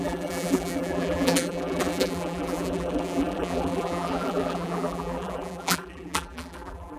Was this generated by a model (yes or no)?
yes